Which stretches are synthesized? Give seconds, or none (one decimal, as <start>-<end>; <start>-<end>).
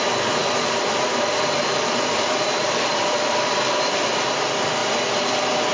0.4-3.8